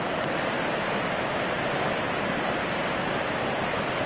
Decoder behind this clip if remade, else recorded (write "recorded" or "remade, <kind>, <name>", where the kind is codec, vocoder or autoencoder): recorded